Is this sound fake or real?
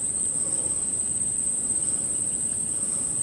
real